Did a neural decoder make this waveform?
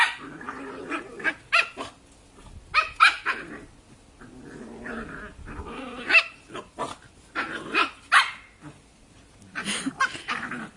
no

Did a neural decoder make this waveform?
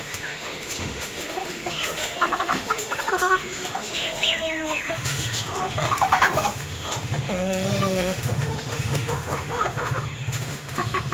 yes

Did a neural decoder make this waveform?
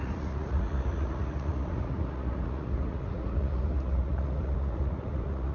yes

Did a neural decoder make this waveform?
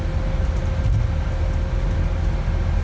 no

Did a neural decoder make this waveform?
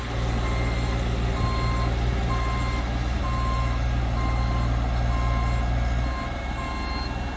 no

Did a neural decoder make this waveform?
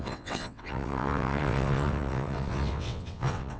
yes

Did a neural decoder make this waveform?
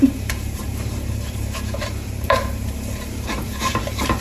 yes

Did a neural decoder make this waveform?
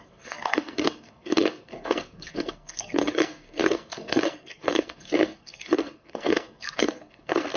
yes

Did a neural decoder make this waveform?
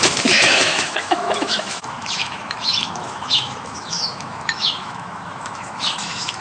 yes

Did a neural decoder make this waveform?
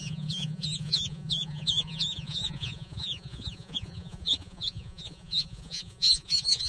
yes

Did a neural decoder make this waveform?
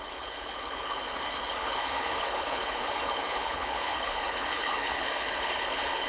yes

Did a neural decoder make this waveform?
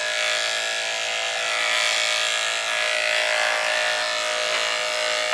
no